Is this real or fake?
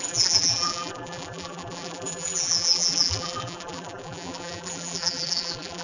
fake